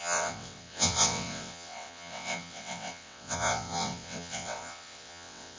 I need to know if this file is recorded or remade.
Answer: remade